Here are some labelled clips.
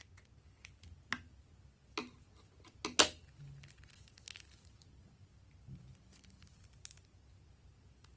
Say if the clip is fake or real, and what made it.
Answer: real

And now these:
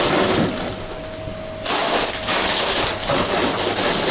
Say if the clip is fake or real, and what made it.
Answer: real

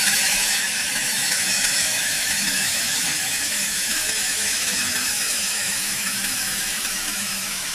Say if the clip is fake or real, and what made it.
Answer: fake, autoencoder, DAC-VAE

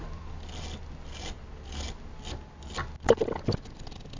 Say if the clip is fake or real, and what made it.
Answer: real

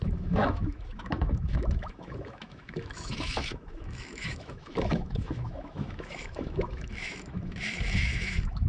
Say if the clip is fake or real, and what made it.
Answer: fake, autoencoder, DAC-VAE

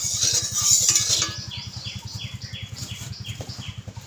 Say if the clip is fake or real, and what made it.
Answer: real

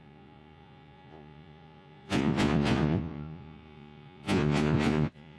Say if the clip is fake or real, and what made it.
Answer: fake, vocoder, Vocos